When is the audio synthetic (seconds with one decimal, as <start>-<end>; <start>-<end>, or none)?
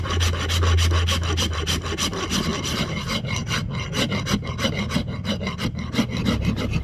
none